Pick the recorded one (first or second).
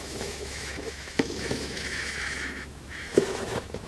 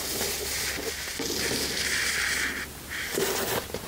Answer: second